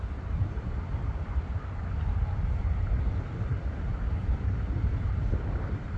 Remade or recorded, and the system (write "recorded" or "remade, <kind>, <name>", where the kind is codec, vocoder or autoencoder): recorded